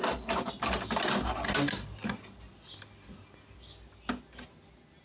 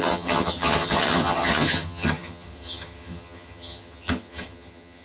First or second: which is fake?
second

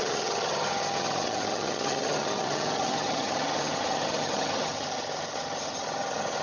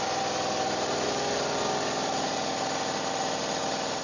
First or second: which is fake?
first